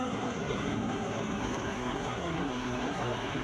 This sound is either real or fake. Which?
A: fake